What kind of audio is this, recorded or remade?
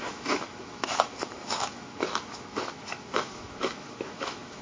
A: remade